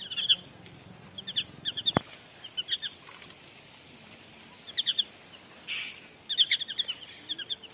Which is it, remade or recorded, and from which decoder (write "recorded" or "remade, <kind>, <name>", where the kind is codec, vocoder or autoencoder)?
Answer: recorded